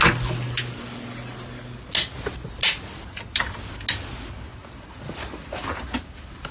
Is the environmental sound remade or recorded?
recorded